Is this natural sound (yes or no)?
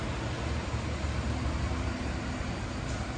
yes